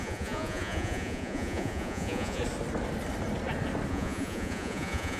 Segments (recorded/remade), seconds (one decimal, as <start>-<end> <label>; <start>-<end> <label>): 0.0-2.4 remade; 2.4-3.9 recorded; 3.9-5.2 remade